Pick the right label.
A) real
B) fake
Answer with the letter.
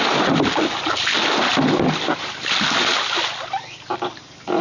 A